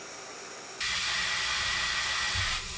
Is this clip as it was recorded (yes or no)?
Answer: yes